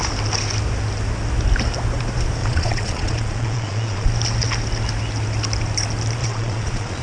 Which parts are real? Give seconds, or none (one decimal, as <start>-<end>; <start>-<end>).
0.0-2.4; 4.1-6.2